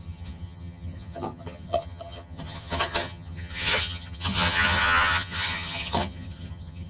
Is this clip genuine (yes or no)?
no